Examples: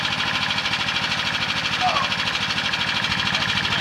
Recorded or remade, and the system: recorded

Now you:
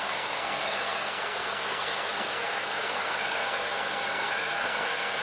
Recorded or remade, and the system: remade, codec, SNAC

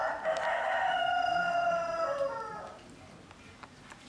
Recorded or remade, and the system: recorded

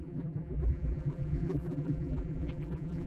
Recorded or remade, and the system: remade, vocoder, BigVGAN v2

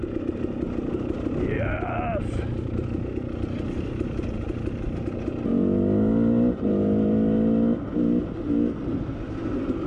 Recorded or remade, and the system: recorded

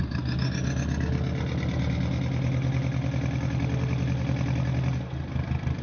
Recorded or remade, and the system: recorded